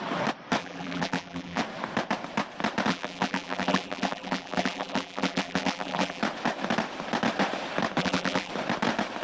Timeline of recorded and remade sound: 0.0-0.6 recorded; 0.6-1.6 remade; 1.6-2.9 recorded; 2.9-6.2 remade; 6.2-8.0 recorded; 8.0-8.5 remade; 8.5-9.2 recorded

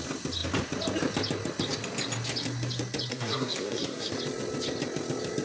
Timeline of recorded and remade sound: 0.0-3.1 recorded; 3.1-4.1 remade; 4.1-5.4 recorded

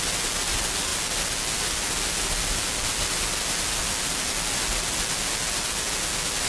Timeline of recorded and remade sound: 0.0-6.5 recorded